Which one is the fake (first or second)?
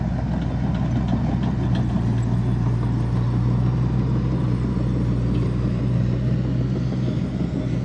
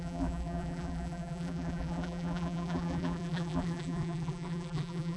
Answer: second